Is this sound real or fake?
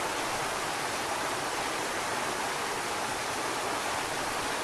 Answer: real